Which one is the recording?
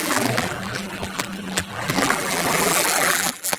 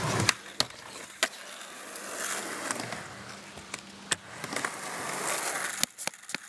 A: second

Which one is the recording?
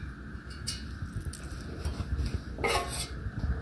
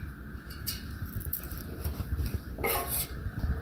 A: first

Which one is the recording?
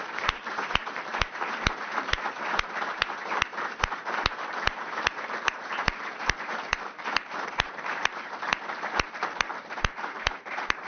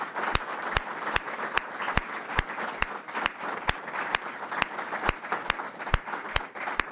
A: second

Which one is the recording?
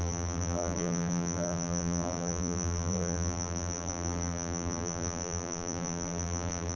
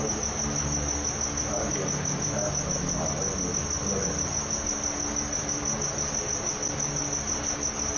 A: second